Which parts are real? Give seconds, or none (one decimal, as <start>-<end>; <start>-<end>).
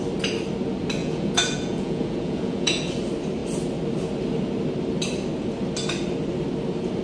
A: 0.0-1.0; 2.9-7.0